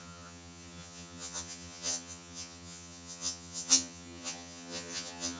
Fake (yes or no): yes